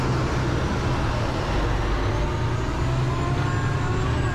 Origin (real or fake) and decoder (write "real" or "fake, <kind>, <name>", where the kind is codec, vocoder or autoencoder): real